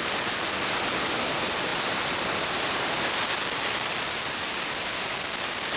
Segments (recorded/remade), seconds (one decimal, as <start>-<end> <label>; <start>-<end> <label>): 0.0-5.8 recorded